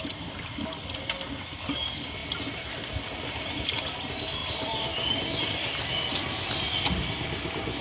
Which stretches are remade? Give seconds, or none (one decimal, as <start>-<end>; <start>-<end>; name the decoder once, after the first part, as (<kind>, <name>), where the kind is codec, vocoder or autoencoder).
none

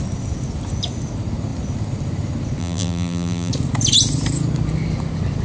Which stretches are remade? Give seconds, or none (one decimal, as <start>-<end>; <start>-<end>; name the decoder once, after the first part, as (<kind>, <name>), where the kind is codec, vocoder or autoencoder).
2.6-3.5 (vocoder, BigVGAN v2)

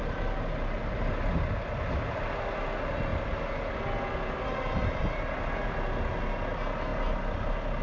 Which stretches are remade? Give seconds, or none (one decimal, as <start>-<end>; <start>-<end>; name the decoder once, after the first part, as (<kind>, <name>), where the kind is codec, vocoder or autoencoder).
none

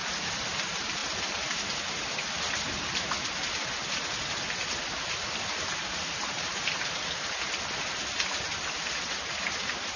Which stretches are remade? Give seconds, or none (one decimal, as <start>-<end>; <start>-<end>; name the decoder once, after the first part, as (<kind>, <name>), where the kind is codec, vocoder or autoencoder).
none